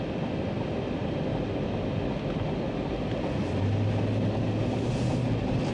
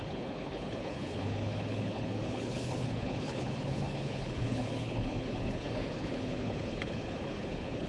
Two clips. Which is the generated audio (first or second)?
second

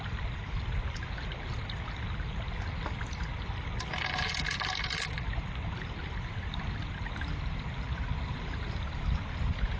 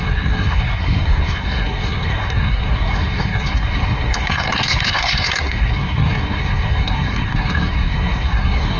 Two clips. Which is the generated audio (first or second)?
second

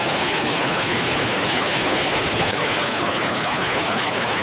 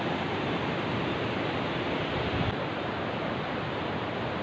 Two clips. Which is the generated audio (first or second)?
first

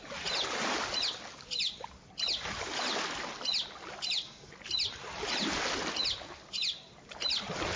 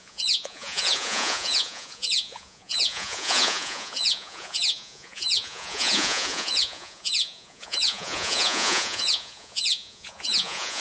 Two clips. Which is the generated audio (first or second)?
second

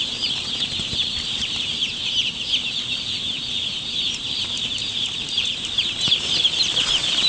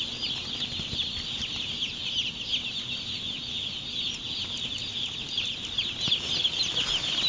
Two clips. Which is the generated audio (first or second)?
first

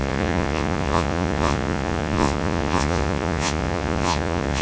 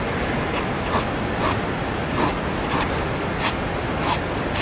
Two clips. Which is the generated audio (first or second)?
first